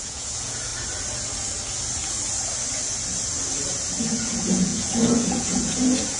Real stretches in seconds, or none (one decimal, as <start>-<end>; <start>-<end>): 0.7-4.0

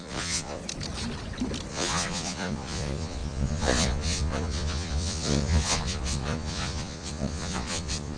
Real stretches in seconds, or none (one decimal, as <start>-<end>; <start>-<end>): 0.6-1.7

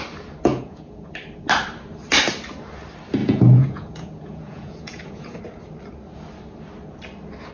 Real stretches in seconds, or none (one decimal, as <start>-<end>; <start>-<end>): 0.0-0.5; 1.1-3.2; 5.4-7.5

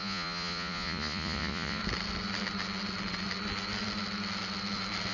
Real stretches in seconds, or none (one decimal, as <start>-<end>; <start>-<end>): 1.8-5.1

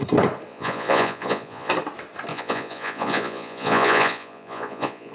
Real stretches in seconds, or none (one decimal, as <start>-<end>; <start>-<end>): 0.0-0.5; 1.7-2.3

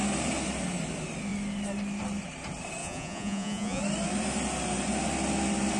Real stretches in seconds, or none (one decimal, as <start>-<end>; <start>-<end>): 0.0-2.8; 3.8-5.8